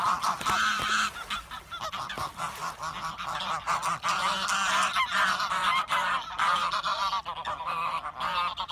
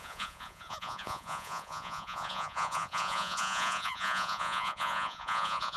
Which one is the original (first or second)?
first